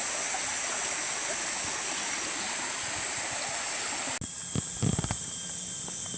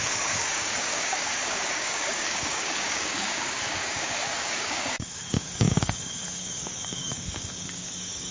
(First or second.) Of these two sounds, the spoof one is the second